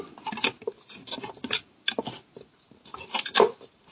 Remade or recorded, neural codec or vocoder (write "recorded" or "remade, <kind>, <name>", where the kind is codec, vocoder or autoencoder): recorded